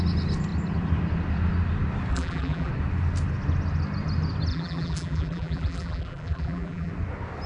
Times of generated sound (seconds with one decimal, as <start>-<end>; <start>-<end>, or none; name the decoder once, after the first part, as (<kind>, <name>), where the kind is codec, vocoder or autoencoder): 2.1-2.7 (vocoder, BigVGAN v2); 4.5-6.9